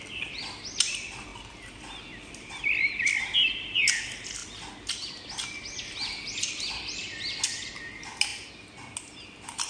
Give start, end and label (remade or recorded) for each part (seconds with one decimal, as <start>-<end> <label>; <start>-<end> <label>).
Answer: 0.0-9.7 recorded